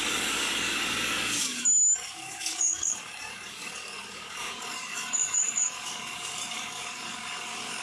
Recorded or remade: remade